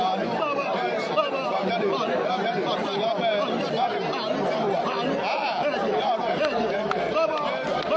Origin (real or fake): real